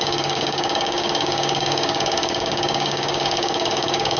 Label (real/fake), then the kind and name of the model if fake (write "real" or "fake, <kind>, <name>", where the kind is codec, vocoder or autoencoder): fake, codec, DAC